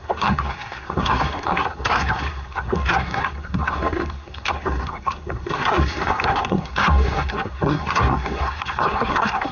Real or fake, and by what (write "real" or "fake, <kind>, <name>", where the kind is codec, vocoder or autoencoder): fake, codec, SNAC